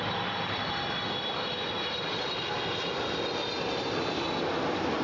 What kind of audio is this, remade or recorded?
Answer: recorded